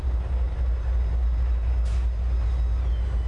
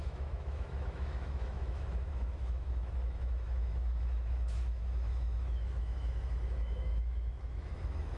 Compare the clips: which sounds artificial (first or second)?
second